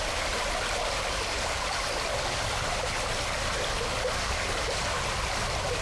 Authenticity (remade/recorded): recorded